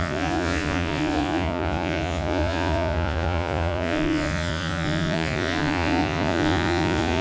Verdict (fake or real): fake